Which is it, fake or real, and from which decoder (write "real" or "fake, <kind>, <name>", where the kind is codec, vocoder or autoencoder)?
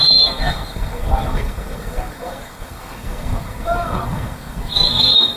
fake, codec, SNAC